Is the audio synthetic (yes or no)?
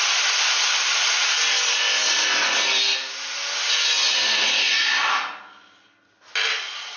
no